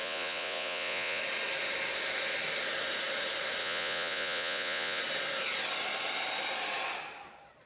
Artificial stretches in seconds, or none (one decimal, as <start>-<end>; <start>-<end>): 0.0-1.2; 3.6-5.0